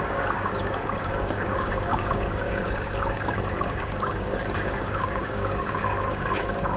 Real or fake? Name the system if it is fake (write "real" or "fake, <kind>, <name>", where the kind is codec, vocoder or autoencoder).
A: fake, codec, DAC